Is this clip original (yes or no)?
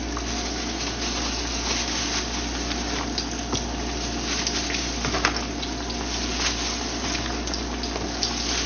yes